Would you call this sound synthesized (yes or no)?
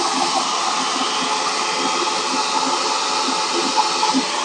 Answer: no